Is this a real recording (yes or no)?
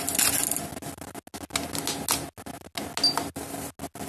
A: yes